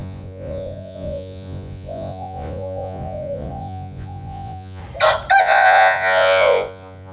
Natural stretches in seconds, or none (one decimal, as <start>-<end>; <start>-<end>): 4.8-5.4

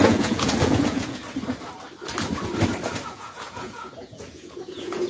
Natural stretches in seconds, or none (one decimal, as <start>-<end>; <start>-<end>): 1.2-3.1